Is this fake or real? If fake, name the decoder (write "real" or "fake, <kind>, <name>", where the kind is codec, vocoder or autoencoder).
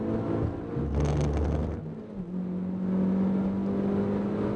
real